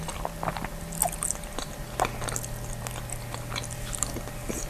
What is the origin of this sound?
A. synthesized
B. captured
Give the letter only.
B